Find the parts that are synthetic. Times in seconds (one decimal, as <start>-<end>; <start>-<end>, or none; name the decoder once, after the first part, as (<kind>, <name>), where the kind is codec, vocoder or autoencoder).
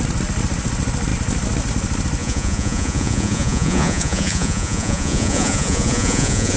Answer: 2.2-6.6 (vocoder, Vocos)